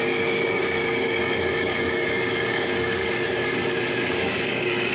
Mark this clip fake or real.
fake